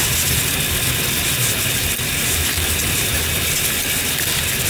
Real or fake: real